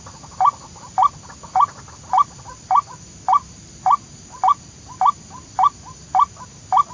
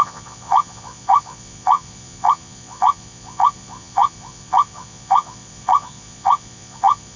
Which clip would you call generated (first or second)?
second